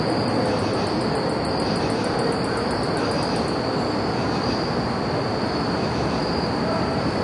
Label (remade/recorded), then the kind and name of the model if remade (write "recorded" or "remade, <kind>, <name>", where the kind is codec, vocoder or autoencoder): recorded